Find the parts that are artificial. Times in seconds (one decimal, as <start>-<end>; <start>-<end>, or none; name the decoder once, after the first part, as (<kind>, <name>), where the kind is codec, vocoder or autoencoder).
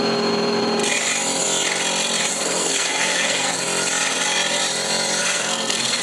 2.3-3.6 (codec, SNAC); 5.2-6.0